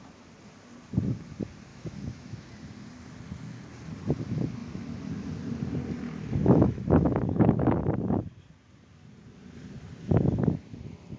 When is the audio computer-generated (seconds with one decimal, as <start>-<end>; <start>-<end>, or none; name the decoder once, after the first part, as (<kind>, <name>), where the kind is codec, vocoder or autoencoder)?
1.7-2.5 (autoencoder, DAC-VAE); 6.4-7.8